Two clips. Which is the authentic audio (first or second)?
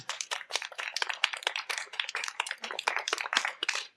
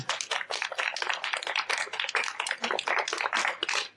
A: second